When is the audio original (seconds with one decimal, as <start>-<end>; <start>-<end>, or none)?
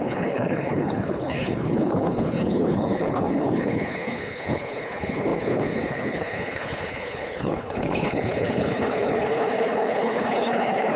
none